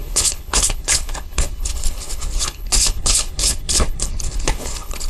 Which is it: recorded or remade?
remade